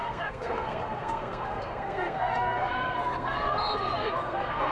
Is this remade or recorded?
remade